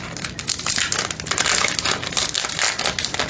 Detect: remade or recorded recorded